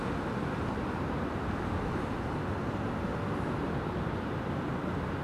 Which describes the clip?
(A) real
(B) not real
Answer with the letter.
A